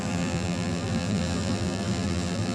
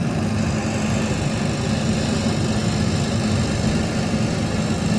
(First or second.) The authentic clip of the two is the second